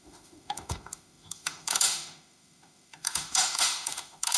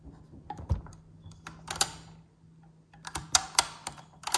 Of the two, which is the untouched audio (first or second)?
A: second